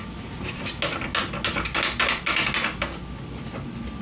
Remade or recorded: recorded